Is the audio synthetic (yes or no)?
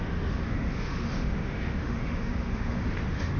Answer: yes